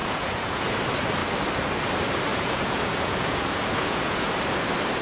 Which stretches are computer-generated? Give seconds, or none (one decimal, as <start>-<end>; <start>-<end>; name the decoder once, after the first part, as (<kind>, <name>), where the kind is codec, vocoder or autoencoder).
0.0-0.7 (vocoder, Vocos); 2.3-4.3